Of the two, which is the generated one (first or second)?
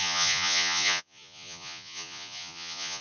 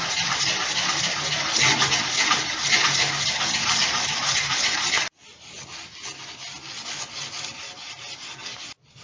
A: first